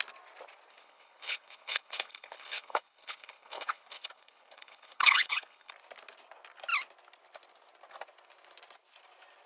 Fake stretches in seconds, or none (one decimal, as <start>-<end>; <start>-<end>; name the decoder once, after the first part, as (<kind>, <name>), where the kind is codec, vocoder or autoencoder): 0.7-5.7 (codec, HILCodec)